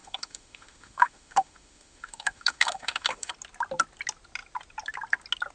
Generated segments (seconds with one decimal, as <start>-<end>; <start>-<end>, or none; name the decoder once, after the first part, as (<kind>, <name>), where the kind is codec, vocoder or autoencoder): 0.0-3.3 (autoencoder, DAC-VAE)